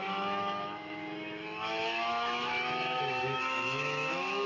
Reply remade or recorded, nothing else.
remade